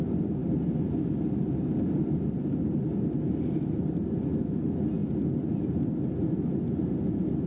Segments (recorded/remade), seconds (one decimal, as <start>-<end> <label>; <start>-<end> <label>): 0.0-7.5 recorded